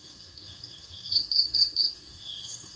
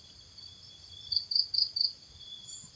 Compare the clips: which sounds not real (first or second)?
first